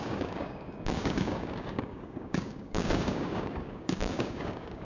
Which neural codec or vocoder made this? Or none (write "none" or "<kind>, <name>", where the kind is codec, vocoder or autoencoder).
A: codec, DAC